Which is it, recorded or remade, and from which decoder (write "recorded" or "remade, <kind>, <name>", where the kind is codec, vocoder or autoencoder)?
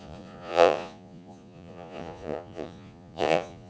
remade, vocoder, Vocos